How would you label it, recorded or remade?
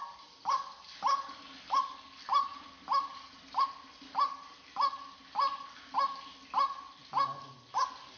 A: recorded